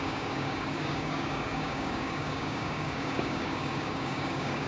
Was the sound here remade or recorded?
remade